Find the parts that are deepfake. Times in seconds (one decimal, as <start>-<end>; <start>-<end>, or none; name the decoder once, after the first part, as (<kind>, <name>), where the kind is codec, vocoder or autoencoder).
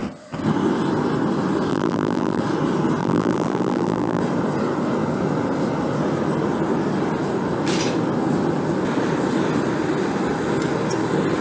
1.7-2.4 (vocoder, BigVGAN v2); 3.0-4.2